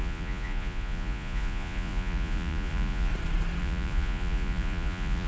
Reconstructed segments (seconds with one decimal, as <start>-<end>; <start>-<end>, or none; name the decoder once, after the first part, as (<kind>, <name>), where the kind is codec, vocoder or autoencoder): 0.0-3.1 (vocoder, Vocos); 3.6-5.3